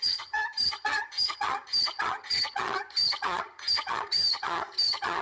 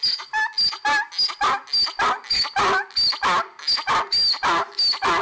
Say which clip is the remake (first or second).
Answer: first